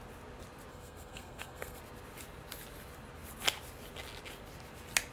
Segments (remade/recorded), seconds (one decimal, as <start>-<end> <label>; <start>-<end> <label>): 0.0-0.7 recorded; 0.7-1.8 remade; 1.8-5.1 recorded